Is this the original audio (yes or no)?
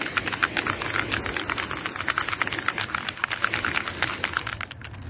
yes